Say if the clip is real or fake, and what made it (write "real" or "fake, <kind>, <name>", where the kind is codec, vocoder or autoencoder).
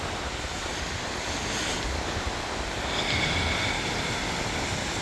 real